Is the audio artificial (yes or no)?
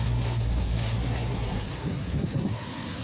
yes